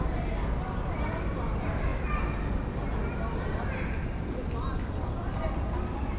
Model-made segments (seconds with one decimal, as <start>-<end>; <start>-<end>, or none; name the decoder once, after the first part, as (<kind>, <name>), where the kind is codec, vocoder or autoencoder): none